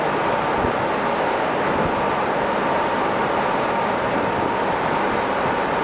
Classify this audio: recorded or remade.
recorded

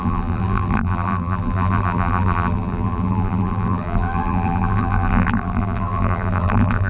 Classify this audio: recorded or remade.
remade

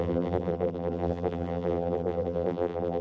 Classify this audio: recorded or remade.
remade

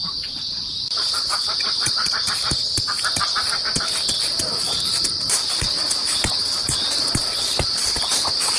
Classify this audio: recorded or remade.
remade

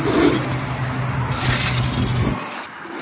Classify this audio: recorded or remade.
recorded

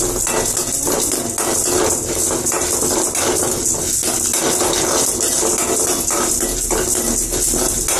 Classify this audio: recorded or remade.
recorded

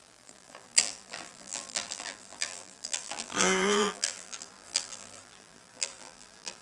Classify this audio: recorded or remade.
remade